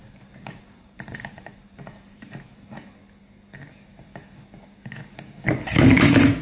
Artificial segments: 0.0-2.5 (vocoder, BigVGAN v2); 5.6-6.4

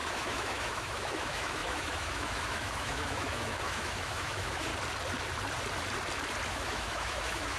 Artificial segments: 0.0-4.7 (autoencoder, DAC-VAE); 6.5-7.6

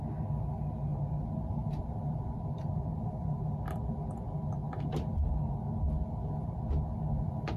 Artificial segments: 0.9-3.6 (vocoder, BigVGAN v2)

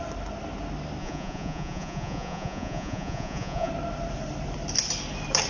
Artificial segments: 1.0-3.7 (vocoder, Vocos)